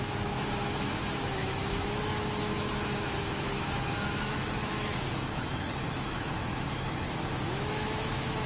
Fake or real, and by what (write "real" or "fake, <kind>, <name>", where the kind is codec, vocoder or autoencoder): fake, autoencoder, DAC-VAE